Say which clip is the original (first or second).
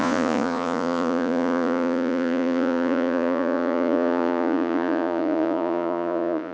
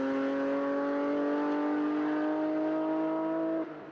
second